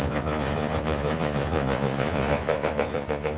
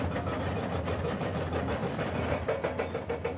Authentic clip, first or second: second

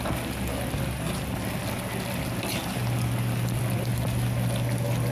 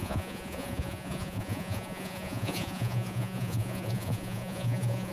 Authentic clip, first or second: first